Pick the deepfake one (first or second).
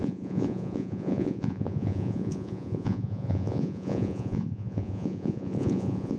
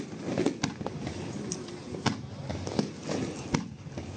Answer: first